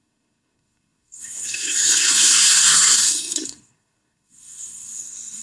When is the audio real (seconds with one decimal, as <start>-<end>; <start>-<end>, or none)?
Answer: none